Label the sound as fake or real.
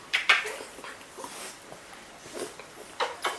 fake